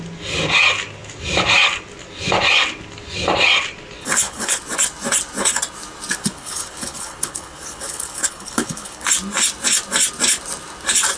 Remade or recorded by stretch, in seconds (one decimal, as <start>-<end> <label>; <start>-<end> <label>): 0.0-4.0 recorded; 4.0-4.6 remade; 4.6-6.2 recorded; 6.2-9.1 remade; 9.1-11.2 recorded